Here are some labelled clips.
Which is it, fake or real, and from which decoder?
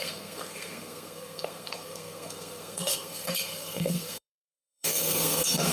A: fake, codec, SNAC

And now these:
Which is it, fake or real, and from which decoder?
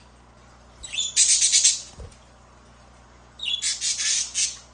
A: real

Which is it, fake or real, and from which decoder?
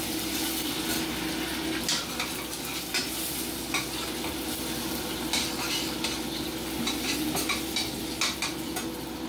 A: real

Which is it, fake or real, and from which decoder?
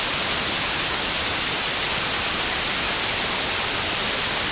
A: real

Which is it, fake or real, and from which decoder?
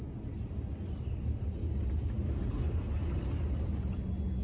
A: real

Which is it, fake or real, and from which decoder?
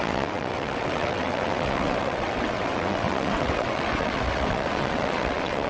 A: fake, vocoder, WaveNeXt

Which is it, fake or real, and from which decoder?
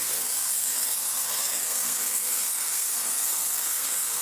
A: fake, codec, SNAC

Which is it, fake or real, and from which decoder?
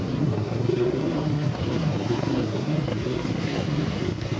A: fake, codec, SNAC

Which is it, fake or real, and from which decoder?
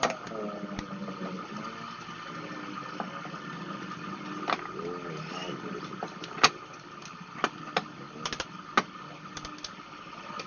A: real